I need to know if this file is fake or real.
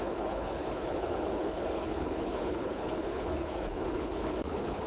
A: fake